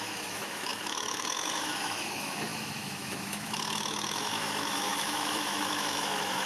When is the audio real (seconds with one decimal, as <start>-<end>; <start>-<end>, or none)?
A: none